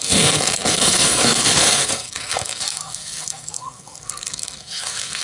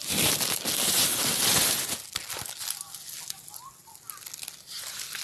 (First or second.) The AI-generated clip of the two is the first